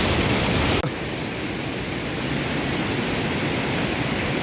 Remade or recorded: recorded